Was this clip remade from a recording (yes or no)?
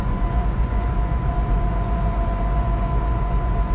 yes